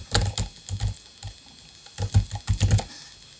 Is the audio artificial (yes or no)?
no